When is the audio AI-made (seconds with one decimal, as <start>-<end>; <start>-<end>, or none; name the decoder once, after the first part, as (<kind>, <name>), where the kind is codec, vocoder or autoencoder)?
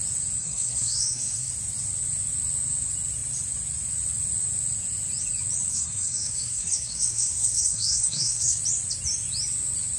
0.4-1.5 (codec, SNAC); 5.7-8.6